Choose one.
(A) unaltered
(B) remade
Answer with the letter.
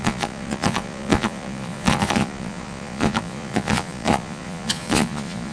B